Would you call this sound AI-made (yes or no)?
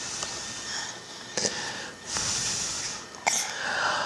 no